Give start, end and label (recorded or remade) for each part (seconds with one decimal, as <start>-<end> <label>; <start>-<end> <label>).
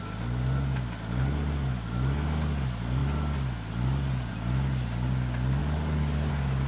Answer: 0.0-5.6 recorded; 5.6-6.3 remade; 6.3-6.7 recorded